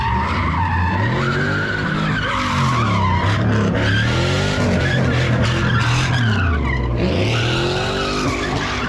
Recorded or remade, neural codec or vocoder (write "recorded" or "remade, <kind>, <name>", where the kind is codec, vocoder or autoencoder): recorded